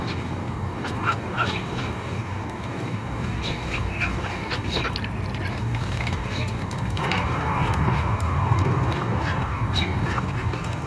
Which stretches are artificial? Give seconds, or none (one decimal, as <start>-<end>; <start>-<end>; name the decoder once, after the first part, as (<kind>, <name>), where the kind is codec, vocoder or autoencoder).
0.0-4.8 (codec, DAC); 5.5-10.9